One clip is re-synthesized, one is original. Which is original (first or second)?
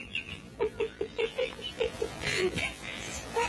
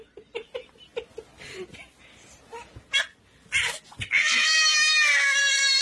second